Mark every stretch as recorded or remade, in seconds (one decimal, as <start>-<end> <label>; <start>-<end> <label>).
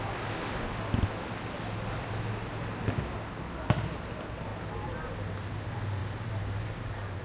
0.0-6.0 recorded; 6.0-7.2 remade